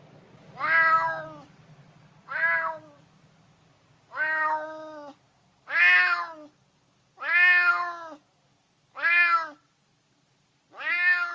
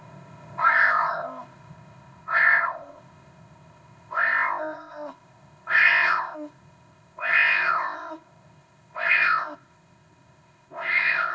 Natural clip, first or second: first